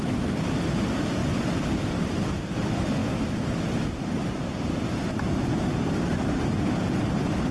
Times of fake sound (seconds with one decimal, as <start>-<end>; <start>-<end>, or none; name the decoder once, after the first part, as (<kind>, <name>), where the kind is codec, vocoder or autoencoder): 0.0-1.2 (vocoder, BigVGAN v2); 2.3-7.5